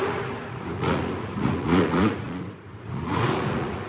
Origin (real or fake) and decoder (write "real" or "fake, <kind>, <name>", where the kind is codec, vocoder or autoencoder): fake, vocoder, Vocos